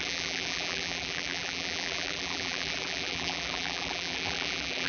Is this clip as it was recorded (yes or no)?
no